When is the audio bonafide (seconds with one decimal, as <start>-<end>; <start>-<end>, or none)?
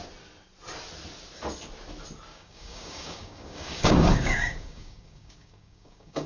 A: 0.0-2.3